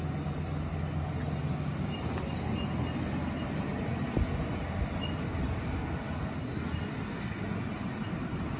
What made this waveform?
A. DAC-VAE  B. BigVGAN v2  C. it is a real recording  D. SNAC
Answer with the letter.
C